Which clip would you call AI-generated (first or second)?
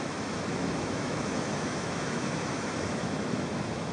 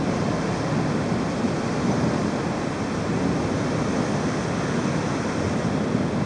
first